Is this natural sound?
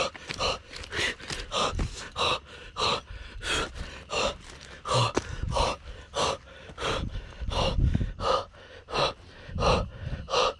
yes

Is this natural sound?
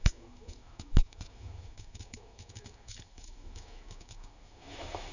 no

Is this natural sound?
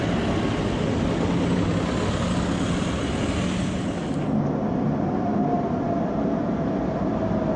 yes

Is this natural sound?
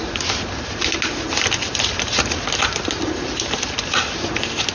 yes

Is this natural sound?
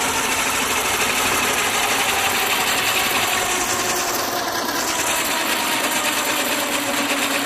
yes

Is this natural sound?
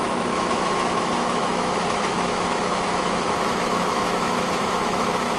no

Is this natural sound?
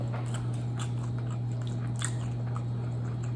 yes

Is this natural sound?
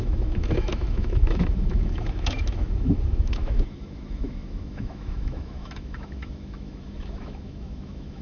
no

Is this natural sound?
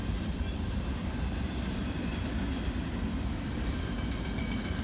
yes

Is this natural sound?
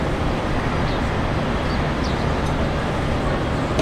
yes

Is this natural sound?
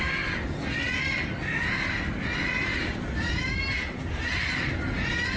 yes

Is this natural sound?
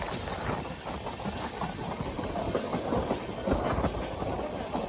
yes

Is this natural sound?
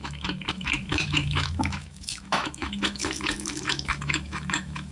no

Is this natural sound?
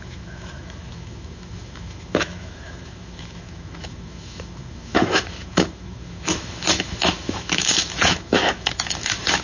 no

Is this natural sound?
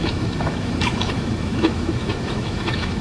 no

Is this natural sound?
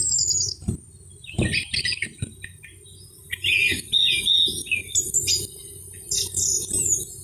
yes